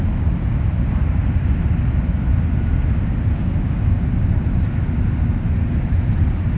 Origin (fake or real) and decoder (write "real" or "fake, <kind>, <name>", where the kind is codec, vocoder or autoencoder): real